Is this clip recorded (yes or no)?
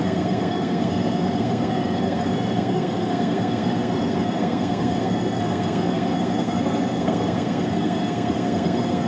no